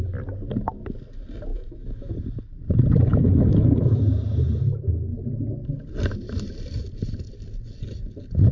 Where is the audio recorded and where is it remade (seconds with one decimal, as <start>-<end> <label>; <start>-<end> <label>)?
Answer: 0.0-1.5 recorded; 1.5-2.1 remade; 2.1-3.1 recorded; 3.1-4.0 remade; 4.0-8.5 recorded